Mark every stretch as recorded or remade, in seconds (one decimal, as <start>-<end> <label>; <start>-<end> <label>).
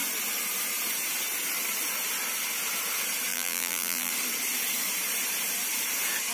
0.0-3.3 recorded; 3.3-4.1 remade; 4.1-6.3 recorded